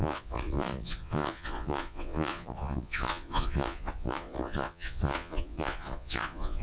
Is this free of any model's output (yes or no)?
no